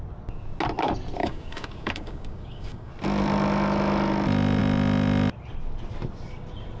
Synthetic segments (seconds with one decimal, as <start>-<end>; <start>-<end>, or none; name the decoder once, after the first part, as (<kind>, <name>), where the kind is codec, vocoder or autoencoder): 1.2-2.9 (codec, DAC)

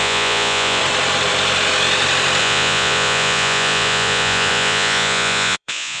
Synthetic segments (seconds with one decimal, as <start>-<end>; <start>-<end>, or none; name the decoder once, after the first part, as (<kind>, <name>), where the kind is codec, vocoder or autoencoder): 0.0-0.8 (vocoder, Vocos); 2.4-6.0